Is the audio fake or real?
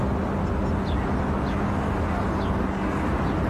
real